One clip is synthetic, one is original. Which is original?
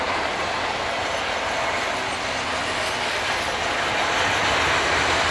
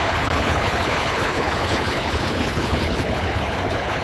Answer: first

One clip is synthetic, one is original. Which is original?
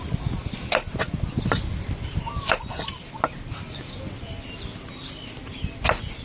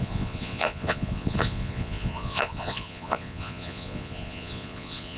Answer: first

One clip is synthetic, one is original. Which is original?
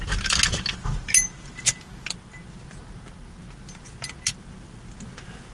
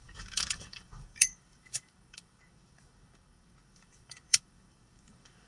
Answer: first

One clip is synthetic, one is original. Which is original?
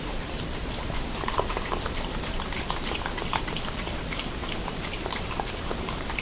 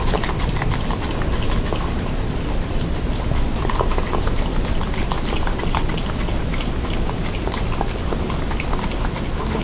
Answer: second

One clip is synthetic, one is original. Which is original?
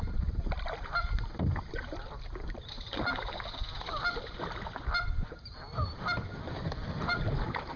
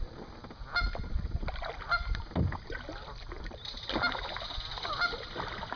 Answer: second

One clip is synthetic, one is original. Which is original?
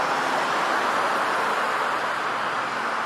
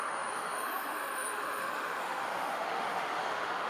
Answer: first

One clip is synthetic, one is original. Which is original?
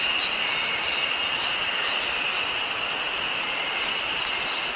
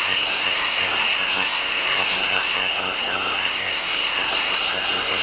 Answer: first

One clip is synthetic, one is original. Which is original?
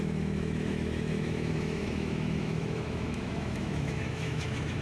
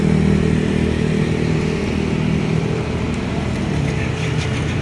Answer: second